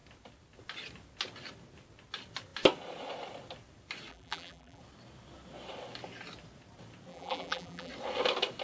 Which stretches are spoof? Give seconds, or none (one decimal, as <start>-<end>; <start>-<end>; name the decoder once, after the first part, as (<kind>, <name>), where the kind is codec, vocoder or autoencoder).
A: 4.1-4.8 (vocoder, BigVGAN v2); 7.1-7.9